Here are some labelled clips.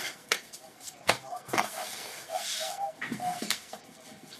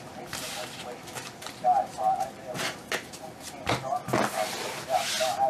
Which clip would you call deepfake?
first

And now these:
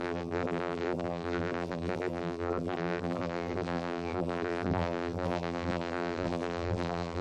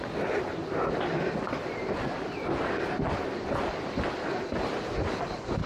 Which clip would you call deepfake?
first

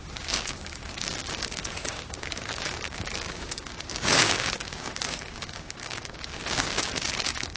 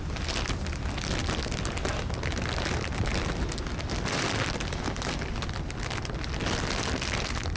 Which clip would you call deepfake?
first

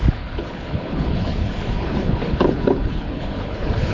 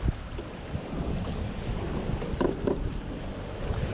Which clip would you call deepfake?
first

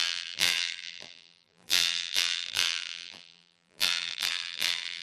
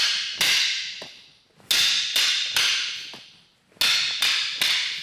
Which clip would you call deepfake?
first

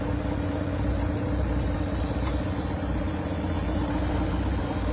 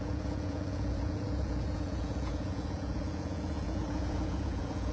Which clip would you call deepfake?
second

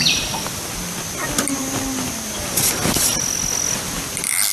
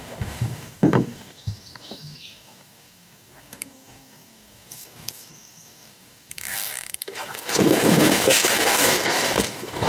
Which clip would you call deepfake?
second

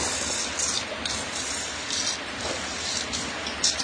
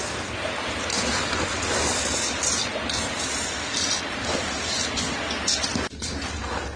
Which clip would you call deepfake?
first